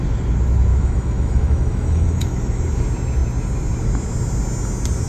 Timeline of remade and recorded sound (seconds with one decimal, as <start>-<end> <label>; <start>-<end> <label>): 0.0-0.7 recorded; 0.7-2.6 remade; 2.6-5.1 recorded